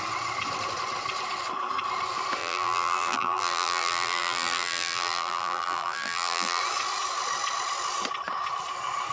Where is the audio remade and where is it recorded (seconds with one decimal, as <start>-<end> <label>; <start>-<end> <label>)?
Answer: 0.0-2.4 recorded; 2.4-6.6 remade; 6.6-9.1 recorded